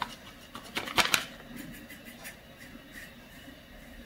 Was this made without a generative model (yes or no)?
yes